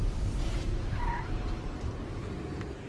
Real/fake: real